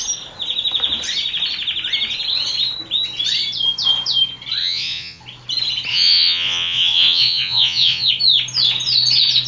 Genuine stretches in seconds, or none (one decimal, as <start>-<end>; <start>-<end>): 0.0-4.6; 5.2-5.9; 8.1-9.5